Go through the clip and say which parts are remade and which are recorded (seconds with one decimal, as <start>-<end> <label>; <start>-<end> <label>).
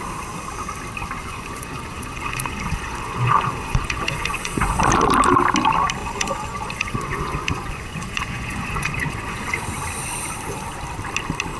0.0-1.2 recorded; 1.2-4.8 remade; 4.8-6.0 recorded; 6.0-9.6 remade; 9.6-11.6 recorded